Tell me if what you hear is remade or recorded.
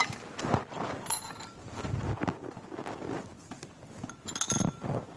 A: recorded